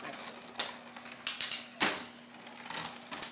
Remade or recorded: recorded